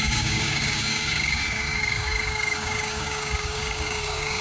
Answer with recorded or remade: remade